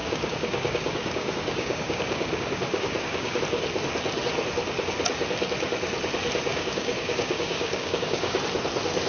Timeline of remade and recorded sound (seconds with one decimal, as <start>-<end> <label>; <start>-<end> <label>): 0.0-3.4 remade; 3.4-6.5 recorded; 6.5-8.4 remade; 8.4-9.1 recorded